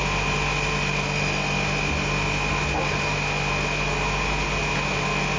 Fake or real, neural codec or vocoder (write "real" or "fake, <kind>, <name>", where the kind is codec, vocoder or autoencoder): real